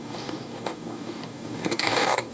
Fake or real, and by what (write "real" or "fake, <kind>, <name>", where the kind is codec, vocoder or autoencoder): fake, codec, DAC